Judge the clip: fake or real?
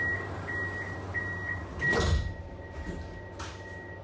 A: real